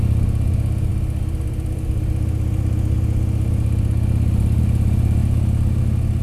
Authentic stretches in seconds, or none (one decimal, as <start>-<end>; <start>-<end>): 0.0-6.2